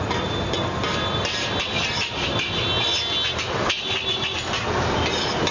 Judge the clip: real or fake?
real